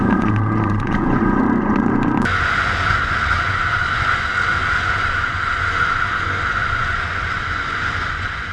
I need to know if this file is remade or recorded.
remade